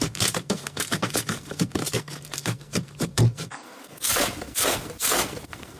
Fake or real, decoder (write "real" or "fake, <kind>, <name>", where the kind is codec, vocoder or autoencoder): fake, codec, SNAC